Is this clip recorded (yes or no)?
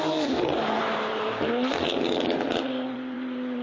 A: no